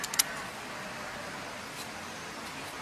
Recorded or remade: recorded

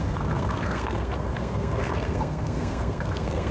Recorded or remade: remade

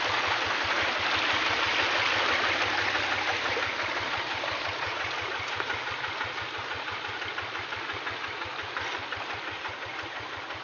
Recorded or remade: recorded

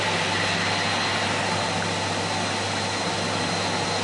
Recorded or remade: remade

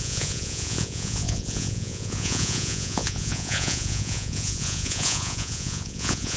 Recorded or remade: remade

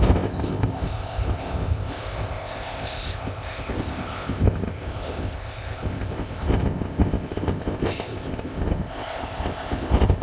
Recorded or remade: remade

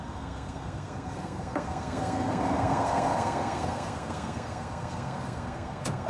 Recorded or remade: remade